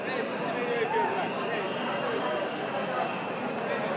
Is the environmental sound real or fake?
real